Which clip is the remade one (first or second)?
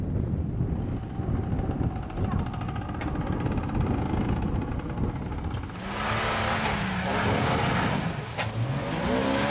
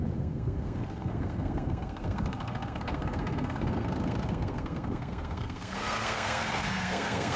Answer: second